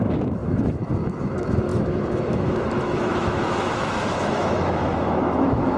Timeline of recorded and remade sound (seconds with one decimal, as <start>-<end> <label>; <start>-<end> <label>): 0.0-5.8 remade